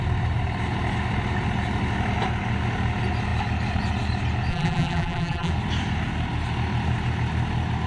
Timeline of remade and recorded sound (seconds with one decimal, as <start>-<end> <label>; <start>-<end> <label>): 0.0-4.5 recorded; 4.5-5.5 remade; 5.5-7.9 recorded